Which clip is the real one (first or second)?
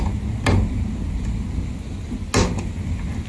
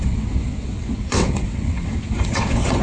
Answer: first